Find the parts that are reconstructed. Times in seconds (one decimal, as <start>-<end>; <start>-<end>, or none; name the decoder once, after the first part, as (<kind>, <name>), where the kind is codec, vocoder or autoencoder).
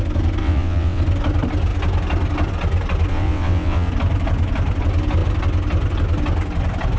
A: 0.4-1.0 (vocoder, WaveNeXt); 3.1-3.9